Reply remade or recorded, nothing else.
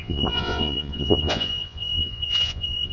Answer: remade